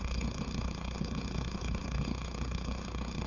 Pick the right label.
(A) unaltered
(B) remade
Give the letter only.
B